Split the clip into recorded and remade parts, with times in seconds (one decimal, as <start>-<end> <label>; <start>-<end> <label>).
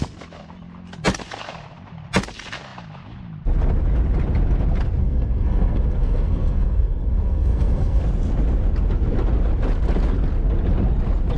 0.0-5.0 recorded; 5.0-8.0 remade; 8.0-11.4 recorded